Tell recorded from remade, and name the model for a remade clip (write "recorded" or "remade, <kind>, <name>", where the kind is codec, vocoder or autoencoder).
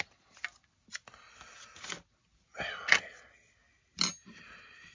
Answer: recorded